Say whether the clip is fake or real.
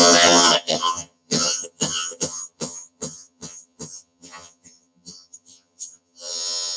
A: fake